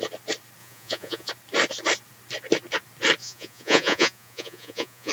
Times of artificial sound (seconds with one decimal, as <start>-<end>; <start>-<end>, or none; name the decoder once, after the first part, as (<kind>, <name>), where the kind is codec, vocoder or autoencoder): 0.6-1.3 (vocoder, Vocos); 3.2-5.1